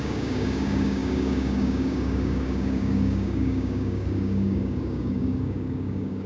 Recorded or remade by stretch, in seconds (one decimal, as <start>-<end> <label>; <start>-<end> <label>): 0.0-6.3 remade